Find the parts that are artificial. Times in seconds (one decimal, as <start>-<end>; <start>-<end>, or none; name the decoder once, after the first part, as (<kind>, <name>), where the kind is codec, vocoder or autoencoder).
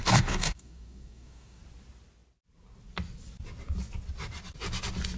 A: 0.0-1.6 (codec, DAC)